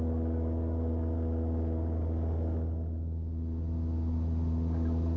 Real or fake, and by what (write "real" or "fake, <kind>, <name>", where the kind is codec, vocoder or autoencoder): real